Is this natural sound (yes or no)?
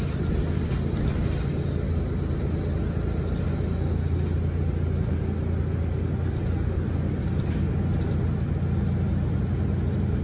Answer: yes